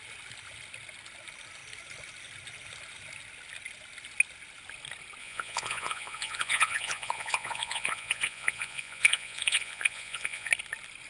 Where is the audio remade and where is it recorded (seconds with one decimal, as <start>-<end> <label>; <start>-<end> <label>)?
0.0-5.2 recorded; 5.2-10.5 remade; 10.5-11.1 recorded